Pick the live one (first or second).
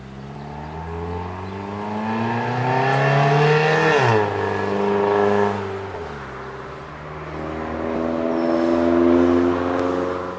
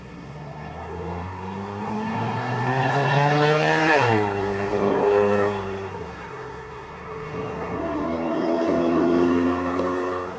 first